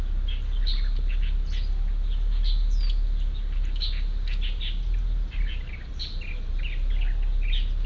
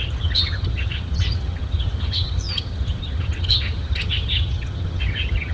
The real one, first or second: first